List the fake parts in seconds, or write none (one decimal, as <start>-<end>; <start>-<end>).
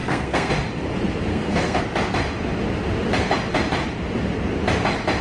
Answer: 0.0-0.5; 1.3-1.8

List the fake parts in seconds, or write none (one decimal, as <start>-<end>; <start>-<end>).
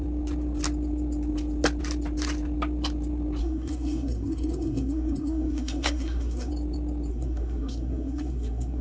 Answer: 3.4-6.5; 7.1-8.8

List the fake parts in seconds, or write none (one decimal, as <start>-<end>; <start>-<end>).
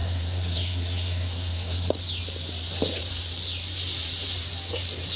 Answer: 0.0-1.9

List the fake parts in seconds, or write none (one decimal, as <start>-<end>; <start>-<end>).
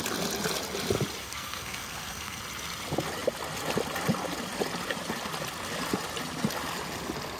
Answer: 1.2-2.4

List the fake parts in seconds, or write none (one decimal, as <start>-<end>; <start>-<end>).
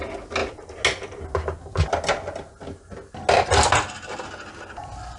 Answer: none